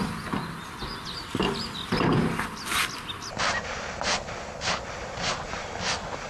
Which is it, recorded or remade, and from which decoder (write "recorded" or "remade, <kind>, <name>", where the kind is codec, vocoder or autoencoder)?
recorded